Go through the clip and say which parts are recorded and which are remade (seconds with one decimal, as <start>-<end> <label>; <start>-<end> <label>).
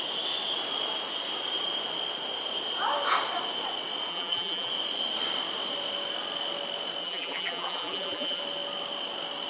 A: 0.0-4.1 recorded; 4.1-4.7 remade; 4.7-7.0 recorded; 7.0-8.4 remade; 8.4-9.5 recorded